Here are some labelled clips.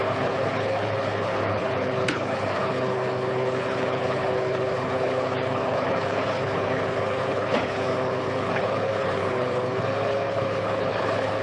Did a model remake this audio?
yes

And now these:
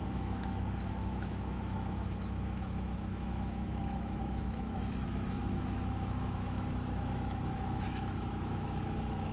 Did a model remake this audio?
yes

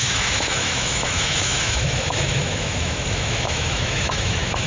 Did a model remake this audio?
yes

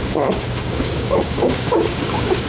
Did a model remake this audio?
yes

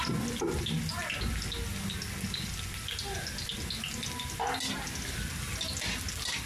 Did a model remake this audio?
no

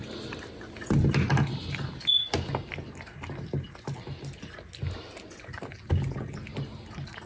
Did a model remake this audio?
no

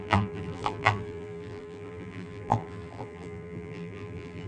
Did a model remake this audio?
yes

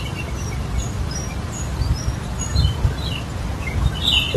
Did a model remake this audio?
yes